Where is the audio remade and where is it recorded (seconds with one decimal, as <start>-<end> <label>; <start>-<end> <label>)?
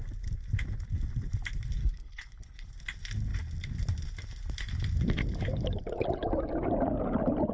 0.0-1.8 recorded; 1.8-2.7 remade; 2.7-7.5 recorded